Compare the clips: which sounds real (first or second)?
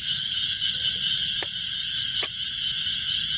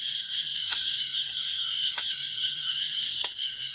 first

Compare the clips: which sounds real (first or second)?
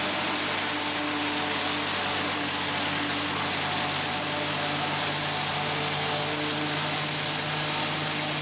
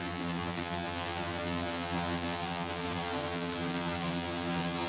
first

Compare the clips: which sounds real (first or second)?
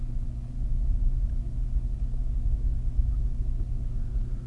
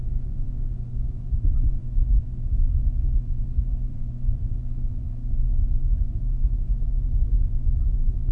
first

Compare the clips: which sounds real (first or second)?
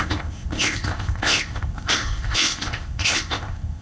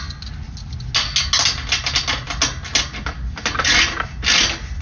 second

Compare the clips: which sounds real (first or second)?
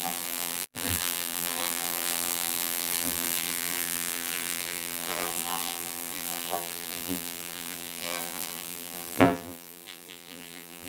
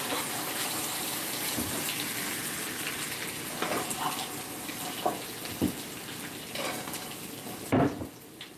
second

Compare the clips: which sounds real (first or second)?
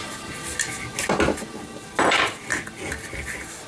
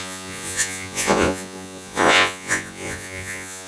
first